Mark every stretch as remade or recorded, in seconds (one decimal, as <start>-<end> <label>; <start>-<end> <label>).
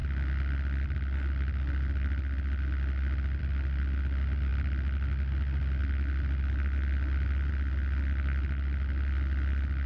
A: 0.0-9.9 recorded